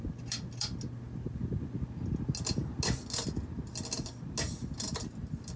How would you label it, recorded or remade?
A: recorded